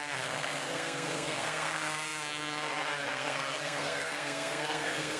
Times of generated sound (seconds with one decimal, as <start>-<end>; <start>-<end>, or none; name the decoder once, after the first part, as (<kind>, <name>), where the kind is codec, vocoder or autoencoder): 0.0-5.2 (codec, SNAC)